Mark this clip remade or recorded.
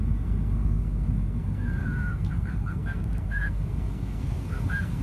remade